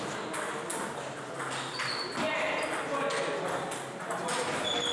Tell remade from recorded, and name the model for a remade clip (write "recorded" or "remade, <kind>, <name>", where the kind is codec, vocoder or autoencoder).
recorded